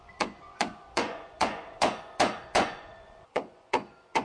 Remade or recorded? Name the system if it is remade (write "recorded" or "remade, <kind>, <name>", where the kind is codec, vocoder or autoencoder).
remade, vocoder, Vocos